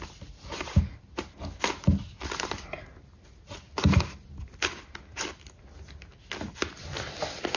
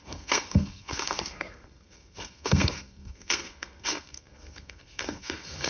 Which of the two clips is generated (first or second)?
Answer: second